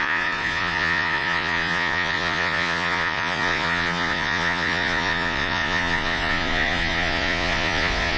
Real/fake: fake